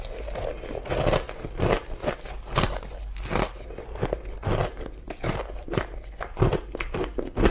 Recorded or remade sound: recorded